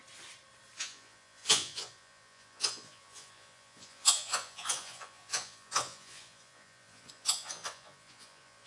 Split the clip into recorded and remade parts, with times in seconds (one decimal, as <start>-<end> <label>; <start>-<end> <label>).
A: 0.0-0.8 recorded; 0.8-8.7 remade